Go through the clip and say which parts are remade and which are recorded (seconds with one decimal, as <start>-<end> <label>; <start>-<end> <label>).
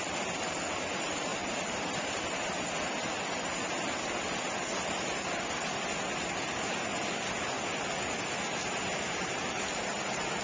0.0-10.4 recorded